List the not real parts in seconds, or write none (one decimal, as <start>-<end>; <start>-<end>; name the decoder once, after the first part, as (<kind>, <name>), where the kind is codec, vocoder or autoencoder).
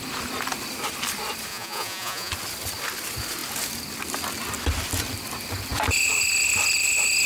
1.5-2.3 (vocoder, Vocos)